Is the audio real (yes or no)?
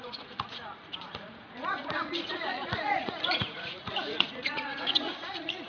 no